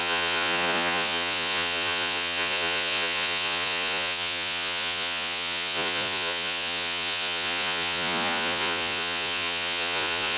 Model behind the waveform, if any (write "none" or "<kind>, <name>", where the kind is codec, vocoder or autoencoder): vocoder, Vocos